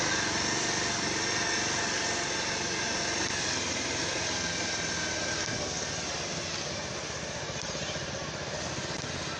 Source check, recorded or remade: recorded